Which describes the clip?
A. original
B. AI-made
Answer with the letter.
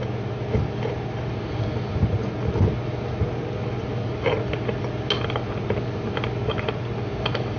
A